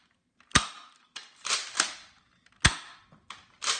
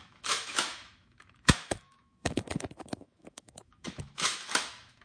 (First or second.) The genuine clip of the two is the first